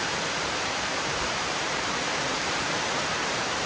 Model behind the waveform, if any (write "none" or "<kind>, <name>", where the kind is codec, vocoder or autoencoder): vocoder, BigVGAN v2